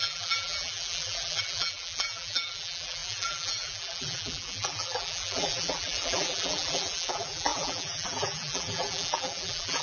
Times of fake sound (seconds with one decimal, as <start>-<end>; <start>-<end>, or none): 0.0-9.8